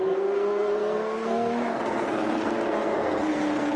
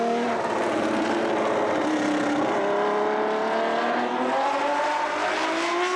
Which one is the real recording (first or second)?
second